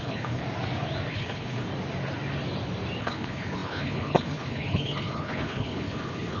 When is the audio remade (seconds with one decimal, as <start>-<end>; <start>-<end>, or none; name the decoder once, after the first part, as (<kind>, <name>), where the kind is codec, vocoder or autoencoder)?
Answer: 0.0-0.4 (codec, HILCodec); 1.1-1.7; 3.0-6.4